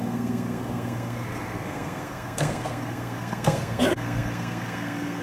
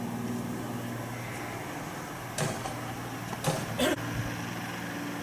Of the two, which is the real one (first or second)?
second